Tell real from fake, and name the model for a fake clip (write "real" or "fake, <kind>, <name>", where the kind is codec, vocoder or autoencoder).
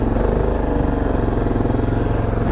real